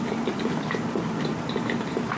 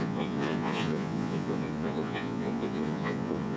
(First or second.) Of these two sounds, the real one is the first